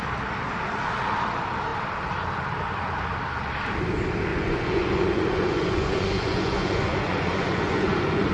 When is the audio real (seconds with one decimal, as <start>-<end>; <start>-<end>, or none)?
0.0-4.3